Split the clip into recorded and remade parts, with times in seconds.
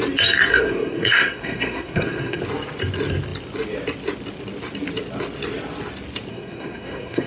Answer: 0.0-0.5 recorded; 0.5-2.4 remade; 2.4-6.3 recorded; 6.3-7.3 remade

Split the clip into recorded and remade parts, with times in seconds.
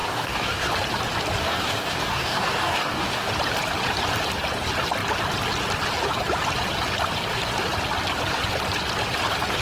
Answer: 0.0-0.7 remade; 0.7-1.4 recorded; 1.4-3.3 remade; 3.3-9.6 recorded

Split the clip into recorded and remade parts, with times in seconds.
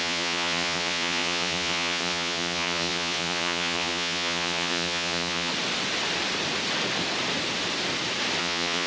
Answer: 0.0-5.5 remade; 5.5-8.4 recorded; 8.4-8.9 remade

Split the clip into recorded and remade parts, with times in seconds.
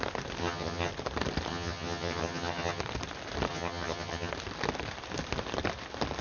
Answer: 0.0-0.4 recorded; 0.4-0.9 remade; 0.9-1.5 recorded; 1.5-2.8 remade; 2.8-3.5 recorded; 3.5-4.3 remade; 4.3-6.2 recorded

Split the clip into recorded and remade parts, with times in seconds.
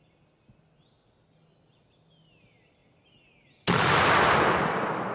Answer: 0.0-5.1 recorded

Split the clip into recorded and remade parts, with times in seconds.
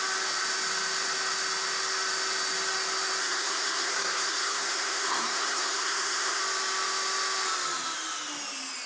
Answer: 0.0-3.2 recorded; 3.2-6.4 remade; 6.4-8.9 recorded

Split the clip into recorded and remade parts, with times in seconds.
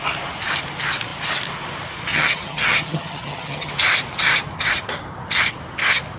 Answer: 0.0-2.1 recorded; 2.1-3.7 remade; 3.7-6.2 recorded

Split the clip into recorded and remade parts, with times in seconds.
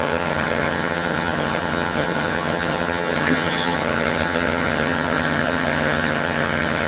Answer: 0.0-6.9 remade